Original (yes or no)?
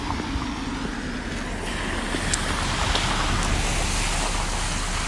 yes